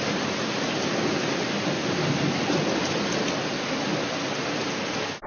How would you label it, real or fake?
real